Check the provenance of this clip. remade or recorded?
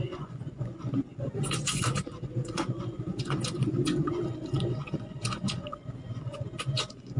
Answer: remade